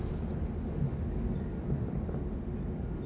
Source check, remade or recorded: recorded